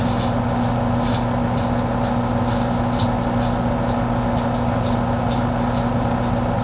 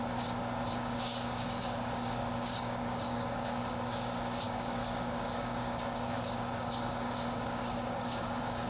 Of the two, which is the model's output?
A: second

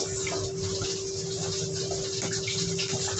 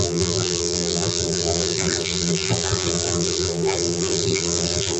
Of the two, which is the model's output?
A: second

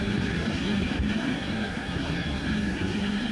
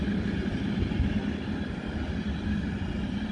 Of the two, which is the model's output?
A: first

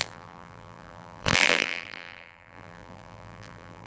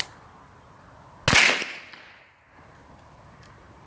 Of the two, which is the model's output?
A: first